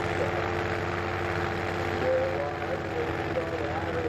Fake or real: real